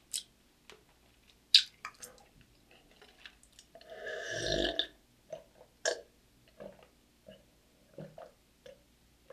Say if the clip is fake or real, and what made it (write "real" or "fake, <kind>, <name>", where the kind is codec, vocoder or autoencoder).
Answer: real